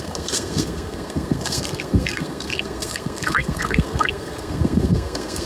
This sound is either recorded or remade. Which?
remade